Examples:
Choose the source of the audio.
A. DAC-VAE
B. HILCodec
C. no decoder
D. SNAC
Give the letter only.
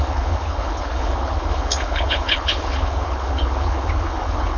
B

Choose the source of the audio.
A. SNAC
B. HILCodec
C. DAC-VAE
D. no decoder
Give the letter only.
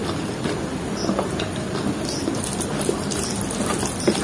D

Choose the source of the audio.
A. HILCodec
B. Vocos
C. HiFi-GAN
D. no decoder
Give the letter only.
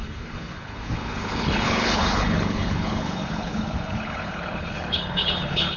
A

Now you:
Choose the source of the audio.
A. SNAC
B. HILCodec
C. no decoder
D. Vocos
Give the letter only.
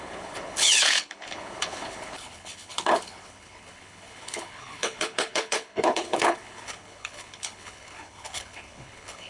B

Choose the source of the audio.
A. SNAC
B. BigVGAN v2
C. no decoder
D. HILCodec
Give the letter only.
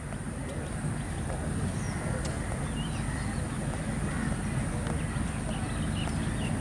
C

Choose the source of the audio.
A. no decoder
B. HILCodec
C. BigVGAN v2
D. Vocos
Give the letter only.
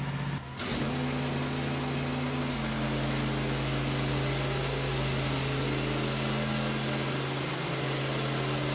A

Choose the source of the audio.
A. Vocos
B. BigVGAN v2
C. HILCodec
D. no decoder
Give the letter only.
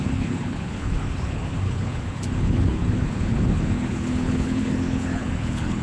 C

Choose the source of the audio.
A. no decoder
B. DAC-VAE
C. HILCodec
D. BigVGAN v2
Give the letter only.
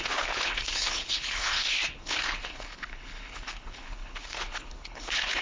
C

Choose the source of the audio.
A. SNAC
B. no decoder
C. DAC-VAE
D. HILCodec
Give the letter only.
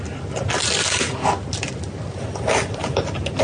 B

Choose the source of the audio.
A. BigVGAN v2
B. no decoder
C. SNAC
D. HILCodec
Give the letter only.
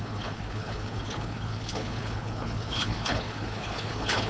D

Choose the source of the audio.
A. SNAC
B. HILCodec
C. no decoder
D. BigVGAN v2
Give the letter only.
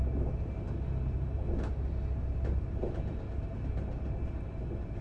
C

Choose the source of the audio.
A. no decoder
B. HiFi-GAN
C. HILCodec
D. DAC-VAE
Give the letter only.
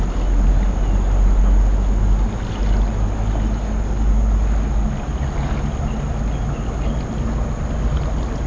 A